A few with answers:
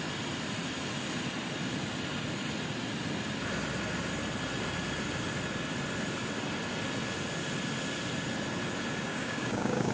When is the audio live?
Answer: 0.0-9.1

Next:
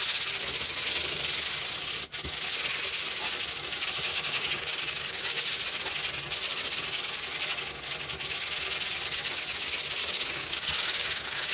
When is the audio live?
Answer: 0.0-4.1; 5.4-10.0

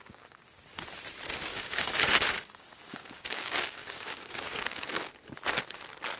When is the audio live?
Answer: 0.8-1.5; 5.1-6.2